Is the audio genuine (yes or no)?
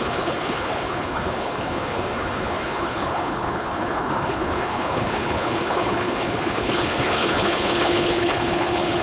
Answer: no